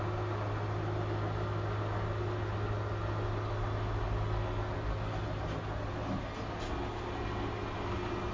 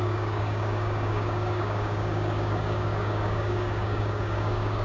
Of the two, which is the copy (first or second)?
second